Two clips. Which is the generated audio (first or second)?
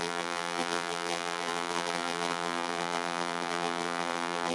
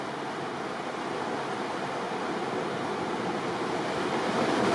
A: first